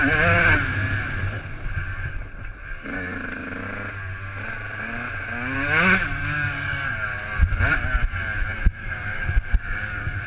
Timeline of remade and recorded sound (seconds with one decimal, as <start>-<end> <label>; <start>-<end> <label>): 0.0-6.2 recorded; 6.2-6.8 remade; 6.8-8.8 recorded; 8.8-10.3 remade